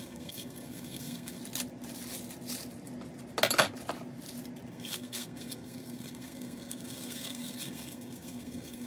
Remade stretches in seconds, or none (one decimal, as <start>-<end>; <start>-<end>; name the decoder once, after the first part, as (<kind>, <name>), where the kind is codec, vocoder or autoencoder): 0.0-1.4 (codec, SNAC); 4.7-8.9